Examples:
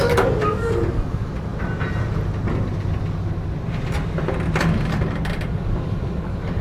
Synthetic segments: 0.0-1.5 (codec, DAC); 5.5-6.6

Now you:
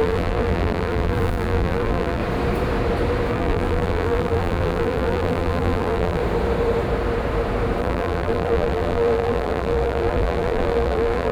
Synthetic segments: 0.0-2.2 (vocoder, BigVGAN v2); 3.3-6.2; 7.8-11.3

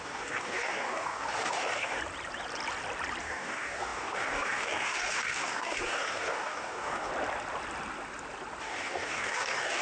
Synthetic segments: 0.0-2.0 (codec, DAC); 3.2-7.1; 8.6-9.8